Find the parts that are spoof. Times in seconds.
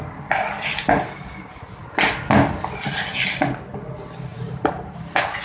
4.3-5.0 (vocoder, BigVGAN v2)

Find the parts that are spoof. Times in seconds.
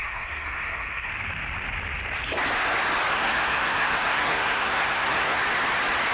0.0-1.1 (codec, SNAC); 3.1-5.4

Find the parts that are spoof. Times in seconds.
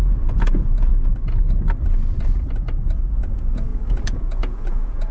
0.0-0.9 (vocoder, Vocos); 3.2-5.1